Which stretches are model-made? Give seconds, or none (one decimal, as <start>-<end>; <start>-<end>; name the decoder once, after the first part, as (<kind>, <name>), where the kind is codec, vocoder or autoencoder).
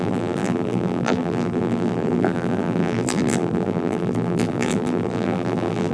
0.0-5.9 (vocoder, BigVGAN v2)